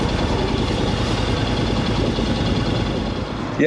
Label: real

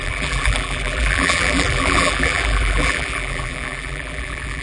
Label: fake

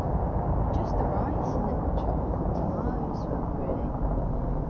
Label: real